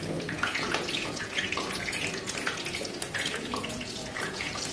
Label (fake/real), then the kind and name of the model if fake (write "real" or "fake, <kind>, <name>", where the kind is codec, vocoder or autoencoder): fake, vocoder, Vocos